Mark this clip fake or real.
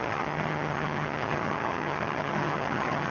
fake